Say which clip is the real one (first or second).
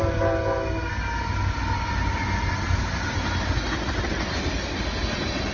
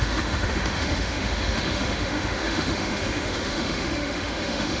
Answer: first